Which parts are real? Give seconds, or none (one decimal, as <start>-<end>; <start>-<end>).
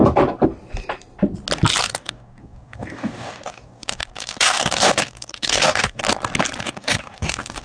0.0-1.8; 6.0-6.6